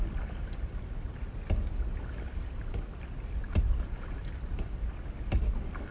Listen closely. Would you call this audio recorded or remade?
recorded